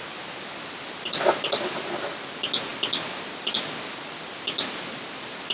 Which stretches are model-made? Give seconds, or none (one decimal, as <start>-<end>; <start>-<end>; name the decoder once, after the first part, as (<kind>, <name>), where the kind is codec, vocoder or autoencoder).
none